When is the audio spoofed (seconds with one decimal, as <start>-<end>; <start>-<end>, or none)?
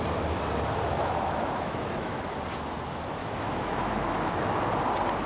0.9-2.3; 3.2-4.6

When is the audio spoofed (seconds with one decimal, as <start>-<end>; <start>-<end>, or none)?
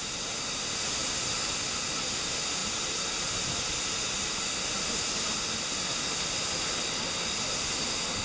none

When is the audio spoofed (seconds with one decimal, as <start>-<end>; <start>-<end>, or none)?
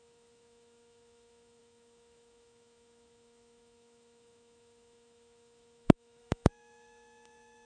0.0-7.6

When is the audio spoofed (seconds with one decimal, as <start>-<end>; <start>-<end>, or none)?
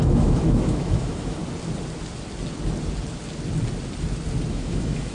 0.0-1.4; 4.5-5.1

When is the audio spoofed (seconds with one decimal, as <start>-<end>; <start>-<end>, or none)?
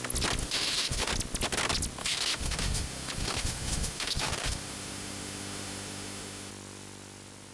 0.4-1.1; 2.0-6.5